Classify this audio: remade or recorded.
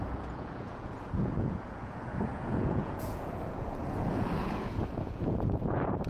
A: remade